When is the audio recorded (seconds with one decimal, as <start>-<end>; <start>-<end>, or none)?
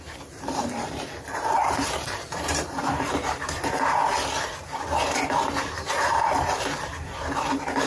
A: 4.0-5.5